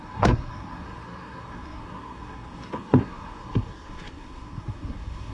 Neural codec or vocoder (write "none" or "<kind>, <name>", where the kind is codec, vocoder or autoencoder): codec, SNAC